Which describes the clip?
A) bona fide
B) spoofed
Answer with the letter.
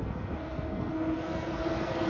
B